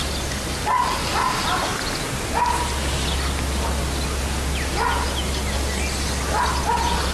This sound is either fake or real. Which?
real